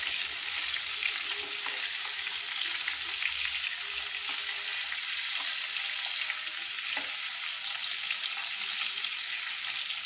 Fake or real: real